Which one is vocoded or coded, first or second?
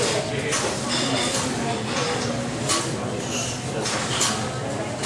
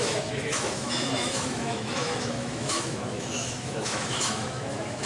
second